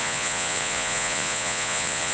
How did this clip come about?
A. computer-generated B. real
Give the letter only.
A